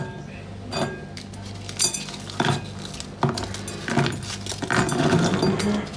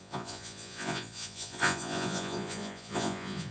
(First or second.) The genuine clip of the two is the first